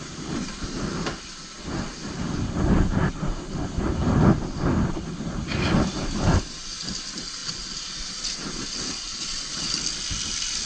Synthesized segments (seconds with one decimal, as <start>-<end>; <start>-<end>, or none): 7.4-8.0; 9.1-9.7